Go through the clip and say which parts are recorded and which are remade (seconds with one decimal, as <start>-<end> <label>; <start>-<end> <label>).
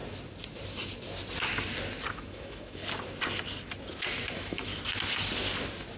0.0-2.1 recorded; 2.1-2.8 remade; 2.8-4.3 recorded; 4.3-4.7 remade; 4.7-6.0 recorded